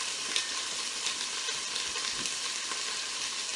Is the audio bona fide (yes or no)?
yes